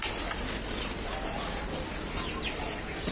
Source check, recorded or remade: recorded